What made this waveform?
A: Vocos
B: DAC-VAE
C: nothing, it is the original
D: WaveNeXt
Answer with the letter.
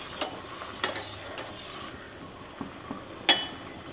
C